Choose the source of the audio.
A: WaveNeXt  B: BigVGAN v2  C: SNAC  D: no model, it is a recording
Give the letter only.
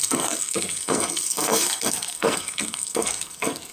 C